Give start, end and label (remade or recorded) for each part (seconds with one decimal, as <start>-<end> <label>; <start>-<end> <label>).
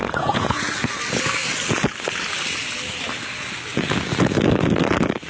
0.0-0.6 remade; 0.6-5.3 recorded